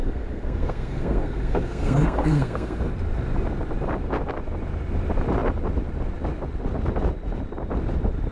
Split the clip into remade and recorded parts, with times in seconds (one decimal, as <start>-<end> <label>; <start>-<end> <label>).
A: 0.0-2.8 remade; 2.8-8.3 recorded